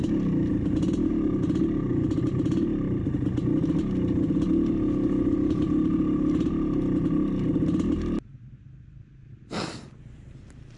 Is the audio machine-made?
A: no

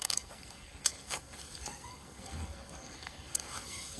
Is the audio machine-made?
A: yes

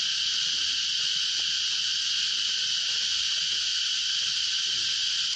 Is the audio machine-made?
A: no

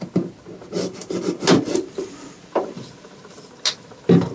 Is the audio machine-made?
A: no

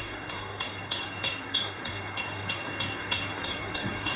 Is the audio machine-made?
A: yes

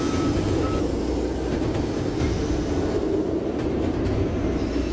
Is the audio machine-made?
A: no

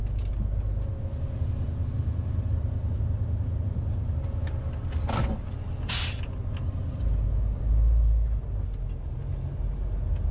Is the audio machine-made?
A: no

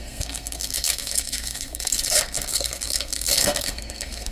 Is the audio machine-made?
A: yes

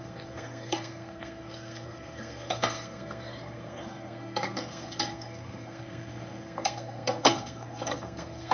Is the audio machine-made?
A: yes